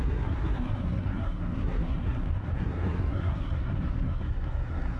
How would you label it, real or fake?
fake